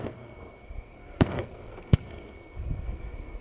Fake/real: fake